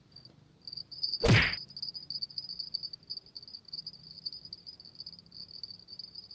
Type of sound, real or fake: real